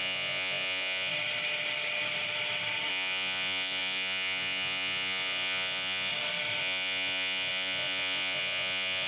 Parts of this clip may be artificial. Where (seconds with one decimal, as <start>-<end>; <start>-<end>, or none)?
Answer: 0.0-1.1; 2.9-6.1; 6.6-9.1